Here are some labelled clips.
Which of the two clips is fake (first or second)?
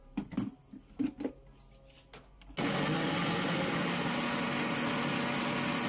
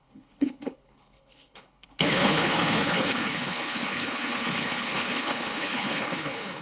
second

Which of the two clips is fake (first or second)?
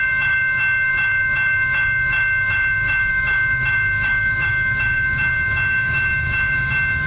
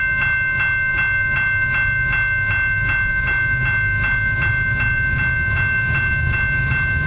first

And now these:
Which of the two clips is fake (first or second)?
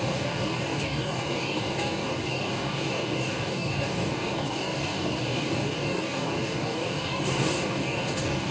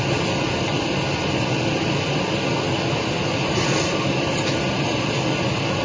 first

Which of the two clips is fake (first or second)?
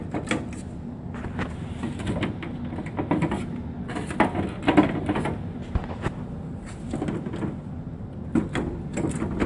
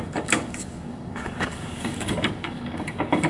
second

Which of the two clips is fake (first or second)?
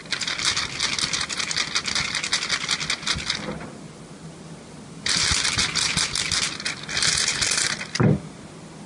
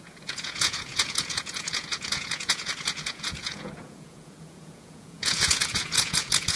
second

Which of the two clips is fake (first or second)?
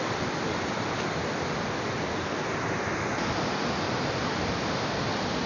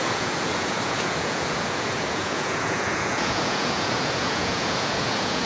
second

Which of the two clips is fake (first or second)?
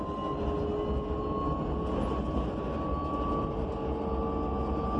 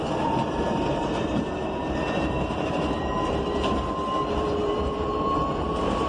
second